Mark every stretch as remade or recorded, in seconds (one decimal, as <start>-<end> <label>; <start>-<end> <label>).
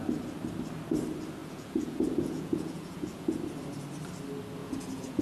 0.0-1.4 recorded; 1.4-3.4 remade; 3.4-4.6 recorded; 4.6-5.2 remade